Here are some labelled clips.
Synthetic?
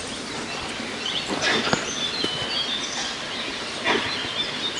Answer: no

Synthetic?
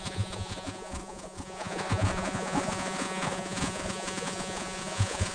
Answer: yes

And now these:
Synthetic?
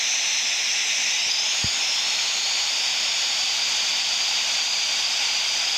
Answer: no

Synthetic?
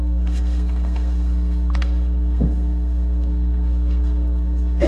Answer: yes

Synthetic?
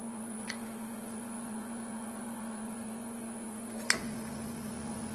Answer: yes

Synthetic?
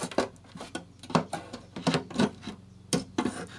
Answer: no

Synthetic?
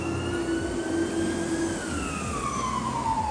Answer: no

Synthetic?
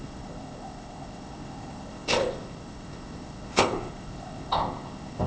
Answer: yes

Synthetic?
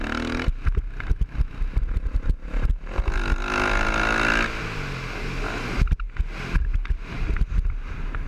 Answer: no